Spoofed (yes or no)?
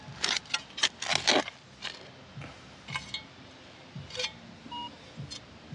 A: no